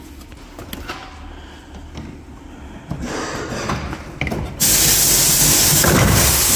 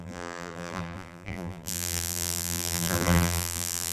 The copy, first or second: second